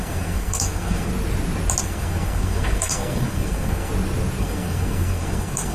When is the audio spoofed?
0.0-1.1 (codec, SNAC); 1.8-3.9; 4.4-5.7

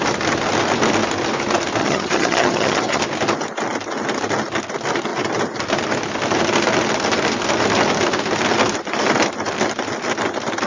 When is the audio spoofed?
1.8-3.0 (vocoder, HiFi-GAN)

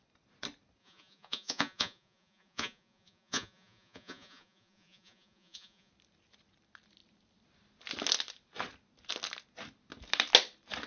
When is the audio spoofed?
0.8-5.9 (vocoder, Vocos)

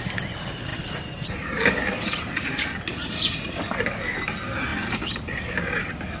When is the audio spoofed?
none

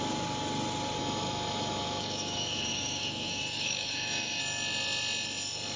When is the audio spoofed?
1.0-4.4 (autoencoder, DAC-VAE)

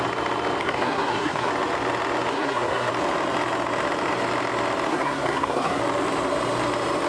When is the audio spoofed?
0.6-1.5 (codec, SNAC); 2.3-2.9; 4.9-5.8

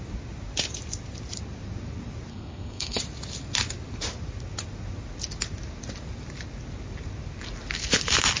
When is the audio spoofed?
2.3-3.0 (codec, SNAC)